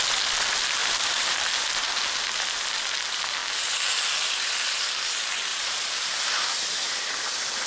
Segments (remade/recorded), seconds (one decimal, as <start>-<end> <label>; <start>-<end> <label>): 0.0-0.8 recorded; 0.8-2.1 remade; 2.1-5.5 recorded; 5.5-6.1 remade; 6.1-7.7 recorded